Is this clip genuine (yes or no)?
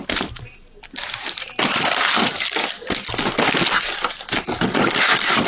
no